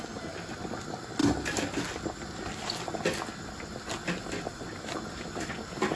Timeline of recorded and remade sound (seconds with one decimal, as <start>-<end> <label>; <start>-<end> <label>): 0.0-6.0 recorded